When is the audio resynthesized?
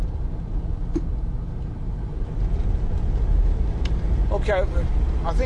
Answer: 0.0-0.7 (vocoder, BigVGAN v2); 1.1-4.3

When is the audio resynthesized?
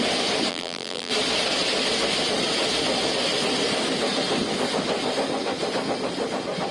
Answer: 0.5-1.1 (vocoder, BigVGAN v2)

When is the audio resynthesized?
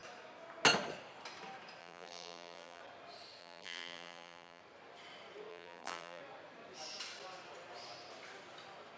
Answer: 1.8-2.8 (vocoder, BigVGAN v2); 3.4-4.6; 5.5-6.2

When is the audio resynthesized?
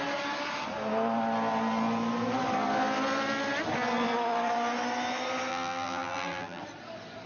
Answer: 5.5-6.6 (vocoder, BigVGAN v2)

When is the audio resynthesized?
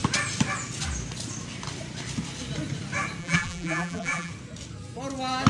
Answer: 3.2-4.3 (vocoder, BigVGAN v2)